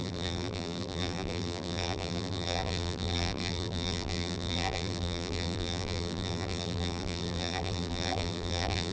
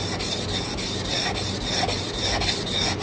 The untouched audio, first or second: second